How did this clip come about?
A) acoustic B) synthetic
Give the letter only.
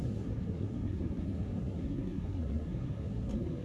B